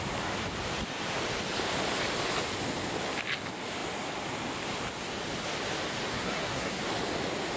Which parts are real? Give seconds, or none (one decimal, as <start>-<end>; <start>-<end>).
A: 0.0-6.1; 6.8-7.6